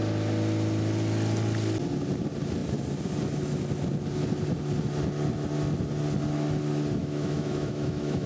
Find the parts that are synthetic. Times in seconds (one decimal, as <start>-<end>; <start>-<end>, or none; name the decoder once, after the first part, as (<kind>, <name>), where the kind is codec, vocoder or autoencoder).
7.0-8.3 (autoencoder, DAC-VAE)